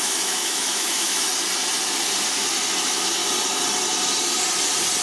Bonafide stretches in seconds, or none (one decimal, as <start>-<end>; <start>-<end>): 1.3-2.8; 3.2-5.0